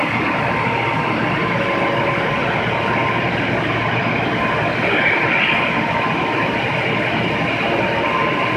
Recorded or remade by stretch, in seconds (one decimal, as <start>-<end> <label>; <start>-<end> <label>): 0.0-8.6 recorded